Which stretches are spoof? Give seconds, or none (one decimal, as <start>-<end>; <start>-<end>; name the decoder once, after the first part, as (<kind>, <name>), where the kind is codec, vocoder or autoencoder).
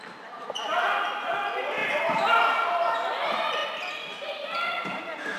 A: 0.0-3.6 (vocoder, BigVGAN v2)